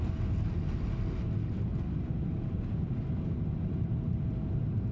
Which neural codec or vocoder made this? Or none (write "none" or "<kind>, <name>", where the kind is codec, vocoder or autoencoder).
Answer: none